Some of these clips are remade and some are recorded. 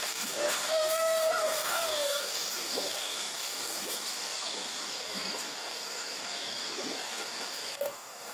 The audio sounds remade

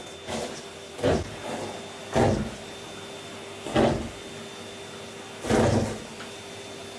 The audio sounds recorded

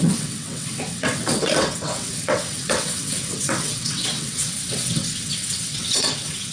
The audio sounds remade